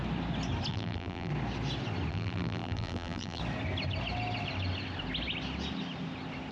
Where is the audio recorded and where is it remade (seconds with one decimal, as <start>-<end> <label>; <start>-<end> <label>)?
0.0-0.7 recorded; 0.7-1.3 remade; 1.3-2.1 recorded; 2.1-3.4 remade; 3.4-6.5 recorded